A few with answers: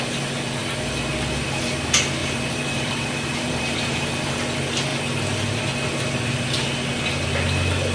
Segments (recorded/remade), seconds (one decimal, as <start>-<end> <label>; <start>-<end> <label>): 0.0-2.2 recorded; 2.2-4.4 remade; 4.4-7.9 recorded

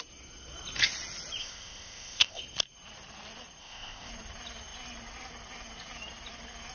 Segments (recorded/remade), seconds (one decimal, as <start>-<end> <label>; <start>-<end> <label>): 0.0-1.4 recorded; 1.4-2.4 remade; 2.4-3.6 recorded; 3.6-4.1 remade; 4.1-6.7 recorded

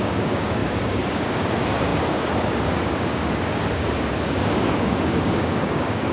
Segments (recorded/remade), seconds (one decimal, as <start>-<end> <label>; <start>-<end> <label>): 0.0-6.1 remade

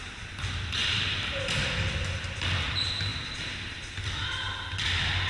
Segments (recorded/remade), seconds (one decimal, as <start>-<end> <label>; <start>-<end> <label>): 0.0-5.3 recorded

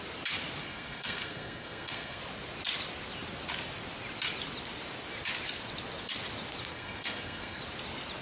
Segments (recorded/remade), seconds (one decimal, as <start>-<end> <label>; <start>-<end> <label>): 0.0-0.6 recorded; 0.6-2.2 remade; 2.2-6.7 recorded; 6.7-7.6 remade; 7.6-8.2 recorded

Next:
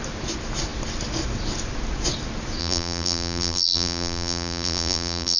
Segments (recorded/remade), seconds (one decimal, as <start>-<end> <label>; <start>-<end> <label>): 0.0-2.6 recorded; 2.6-5.4 remade

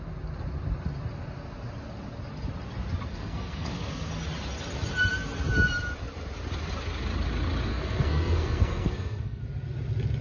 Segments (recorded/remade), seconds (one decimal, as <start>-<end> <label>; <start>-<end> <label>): 0.0-3.1 recorded; 3.1-4.1 remade; 4.1-7.7 recorded; 7.7-9.4 remade; 9.4-10.2 recorded

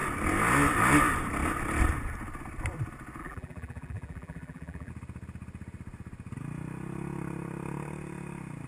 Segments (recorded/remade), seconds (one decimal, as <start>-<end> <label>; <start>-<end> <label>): 0.0-3.2 recorded; 3.2-4.9 remade; 4.9-8.7 recorded